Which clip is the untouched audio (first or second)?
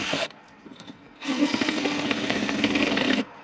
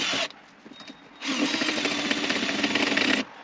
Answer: second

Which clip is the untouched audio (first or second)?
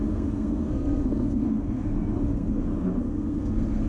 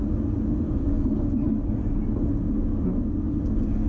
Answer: second